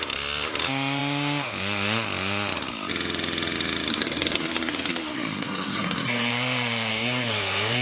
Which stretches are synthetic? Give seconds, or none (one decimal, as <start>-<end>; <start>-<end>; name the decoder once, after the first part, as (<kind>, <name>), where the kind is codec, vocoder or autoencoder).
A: 3.9-6.3 (codec, SNAC); 6.9-7.8